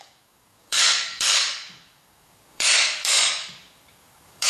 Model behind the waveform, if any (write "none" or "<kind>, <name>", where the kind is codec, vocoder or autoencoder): codec, DAC